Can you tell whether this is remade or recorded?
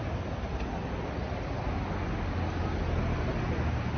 recorded